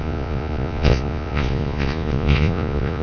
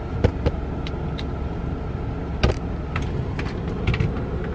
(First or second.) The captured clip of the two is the second